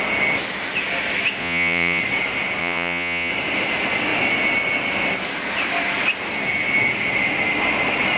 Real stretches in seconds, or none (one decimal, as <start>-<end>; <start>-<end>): 0.0-1.4; 2.0-2.6; 3.3-8.2